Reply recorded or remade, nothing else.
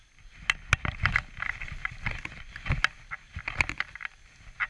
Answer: recorded